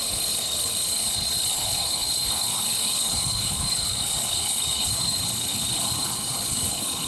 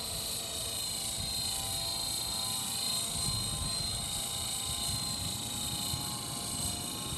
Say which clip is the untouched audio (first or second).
second